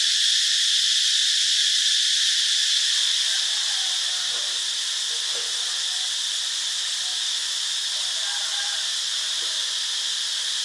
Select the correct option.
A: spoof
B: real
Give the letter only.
A